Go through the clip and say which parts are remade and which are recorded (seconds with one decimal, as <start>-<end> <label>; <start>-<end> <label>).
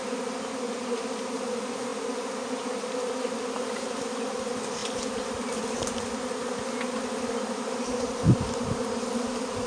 0.0-9.7 recorded